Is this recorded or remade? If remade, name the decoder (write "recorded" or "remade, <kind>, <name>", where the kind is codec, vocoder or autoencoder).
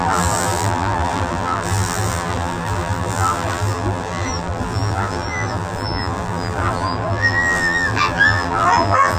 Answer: remade, vocoder, BigVGAN v2